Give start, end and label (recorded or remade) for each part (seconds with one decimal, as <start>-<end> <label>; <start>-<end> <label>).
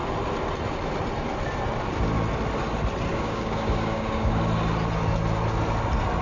0.0-3.1 recorded; 3.1-4.4 remade; 4.4-6.2 recorded